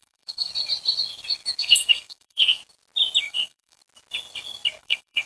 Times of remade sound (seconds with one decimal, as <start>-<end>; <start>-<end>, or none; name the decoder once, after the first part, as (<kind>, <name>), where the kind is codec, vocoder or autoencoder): 0.0-0.5 (codec, SNAC); 1.6-2.6; 3.2-3.8; 4.8-5.3